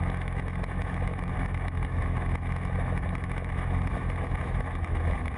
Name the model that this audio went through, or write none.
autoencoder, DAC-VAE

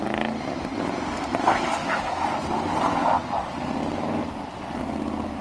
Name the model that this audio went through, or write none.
none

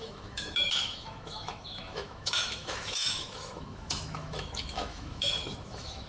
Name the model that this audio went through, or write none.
autoencoder, DAC-VAE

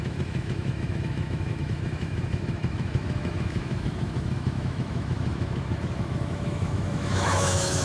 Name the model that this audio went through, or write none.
autoencoder, DAC-VAE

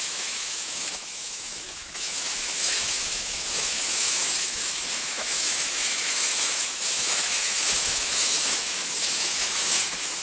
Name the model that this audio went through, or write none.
autoencoder, DAC-VAE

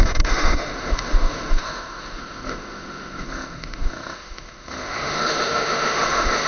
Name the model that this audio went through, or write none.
autoencoder, DAC-VAE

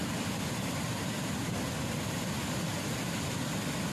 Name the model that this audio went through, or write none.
none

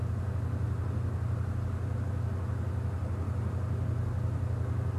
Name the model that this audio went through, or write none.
none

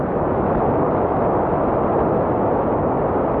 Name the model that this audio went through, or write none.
none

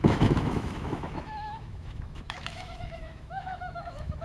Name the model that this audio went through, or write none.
autoencoder, DAC-VAE